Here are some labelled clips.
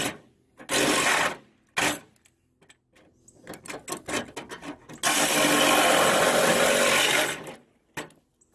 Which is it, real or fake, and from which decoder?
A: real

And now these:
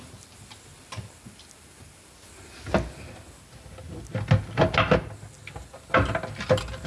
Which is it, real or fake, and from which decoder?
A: real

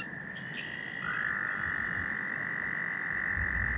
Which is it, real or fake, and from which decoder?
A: real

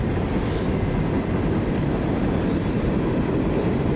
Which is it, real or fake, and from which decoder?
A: real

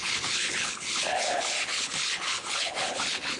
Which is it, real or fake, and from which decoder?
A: fake, codec, HILCodec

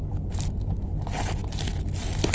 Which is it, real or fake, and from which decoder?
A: real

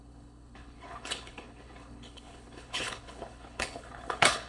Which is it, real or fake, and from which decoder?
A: fake, codec, HILCodec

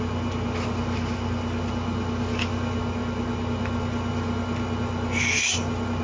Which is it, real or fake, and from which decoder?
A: real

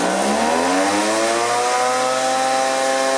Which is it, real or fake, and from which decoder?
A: real